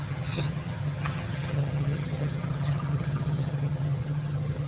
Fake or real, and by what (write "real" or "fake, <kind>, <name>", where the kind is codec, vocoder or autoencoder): fake, vocoder, HiFi-GAN